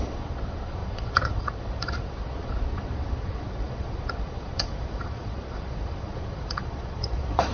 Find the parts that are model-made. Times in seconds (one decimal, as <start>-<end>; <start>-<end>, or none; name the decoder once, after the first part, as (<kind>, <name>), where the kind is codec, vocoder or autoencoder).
0.0-7.5 (vocoder, Vocos)